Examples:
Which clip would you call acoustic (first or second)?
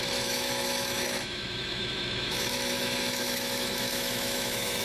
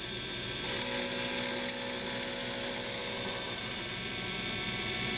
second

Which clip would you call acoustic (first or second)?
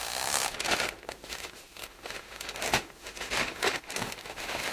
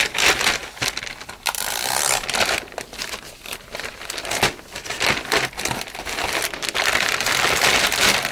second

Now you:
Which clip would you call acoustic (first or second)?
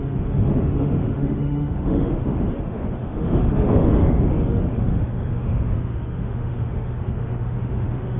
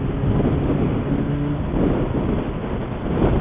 second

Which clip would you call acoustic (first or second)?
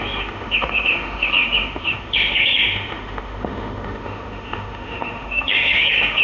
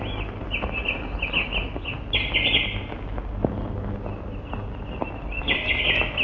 second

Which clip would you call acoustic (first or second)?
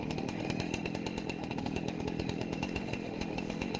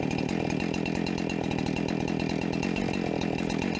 second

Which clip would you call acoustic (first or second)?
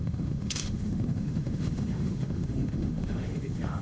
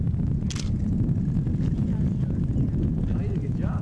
second